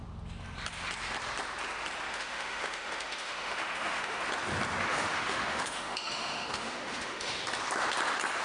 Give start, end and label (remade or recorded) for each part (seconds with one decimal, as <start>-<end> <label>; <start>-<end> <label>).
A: 0.0-2.1 recorded; 2.1-4.2 remade; 4.2-4.9 recorded; 4.9-7.3 remade; 7.3-8.4 recorded